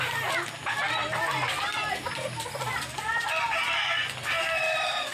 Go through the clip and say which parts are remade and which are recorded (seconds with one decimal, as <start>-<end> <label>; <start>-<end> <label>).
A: 0.0-5.1 recorded